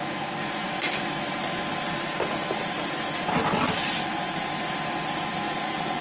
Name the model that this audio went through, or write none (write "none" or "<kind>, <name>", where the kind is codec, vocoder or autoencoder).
none